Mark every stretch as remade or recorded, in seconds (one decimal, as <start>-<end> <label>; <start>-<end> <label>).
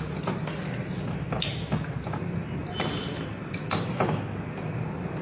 0.0-2.6 recorded; 2.6-3.2 remade; 3.2-5.2 recorded